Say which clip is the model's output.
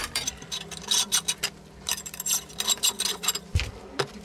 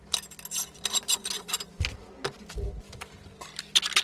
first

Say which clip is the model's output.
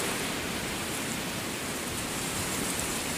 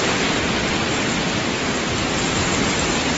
first